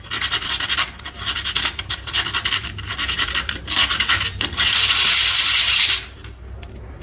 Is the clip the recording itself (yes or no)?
yes